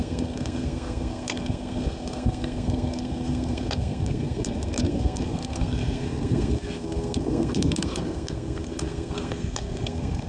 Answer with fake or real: fake